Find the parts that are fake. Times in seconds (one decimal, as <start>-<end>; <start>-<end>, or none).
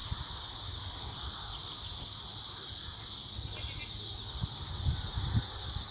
none